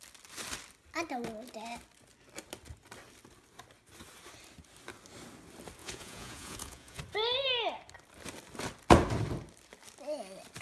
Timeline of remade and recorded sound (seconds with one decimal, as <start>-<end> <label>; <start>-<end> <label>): 0.0-5.8 recorded; 5.8-7.0 remade; 7.0-10.6 recorded